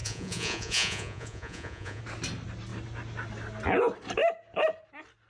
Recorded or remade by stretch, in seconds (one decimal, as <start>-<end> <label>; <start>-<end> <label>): 0.0-2.0 remade; 2.0-5.3 recorded